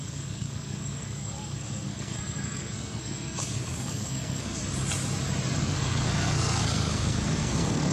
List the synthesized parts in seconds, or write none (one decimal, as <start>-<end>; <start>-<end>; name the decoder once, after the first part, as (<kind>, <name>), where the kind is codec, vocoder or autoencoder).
0.0-4.6 (codec, SNAC); 5.6-7.9